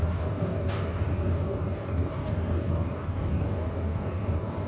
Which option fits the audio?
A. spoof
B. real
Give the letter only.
A